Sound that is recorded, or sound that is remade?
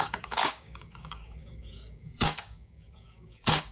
remade